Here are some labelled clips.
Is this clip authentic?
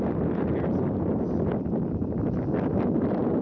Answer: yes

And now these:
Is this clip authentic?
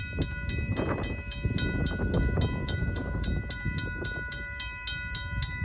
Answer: yes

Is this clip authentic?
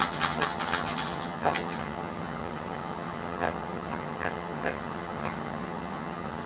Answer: no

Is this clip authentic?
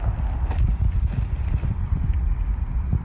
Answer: yes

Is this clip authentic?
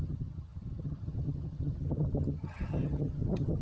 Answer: no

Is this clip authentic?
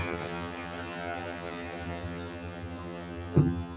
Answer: no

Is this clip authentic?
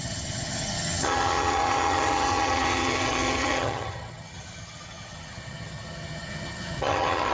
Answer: no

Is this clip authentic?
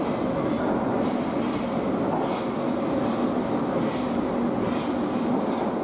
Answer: yes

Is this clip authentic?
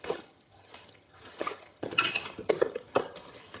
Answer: no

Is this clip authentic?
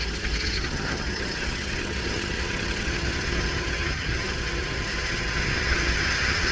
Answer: no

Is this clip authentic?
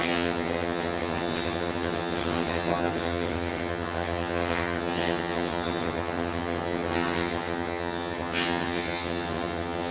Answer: no